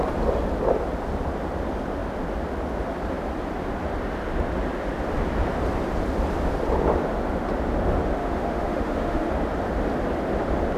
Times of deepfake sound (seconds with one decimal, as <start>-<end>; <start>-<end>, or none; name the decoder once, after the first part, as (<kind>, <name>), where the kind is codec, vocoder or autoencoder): 8.2-9.3 (autoencoder, DAC-VAE)